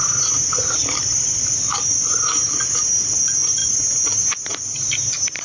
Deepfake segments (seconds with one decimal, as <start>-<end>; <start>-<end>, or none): 0.8-2.5